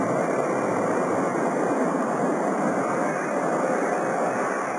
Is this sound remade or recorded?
remade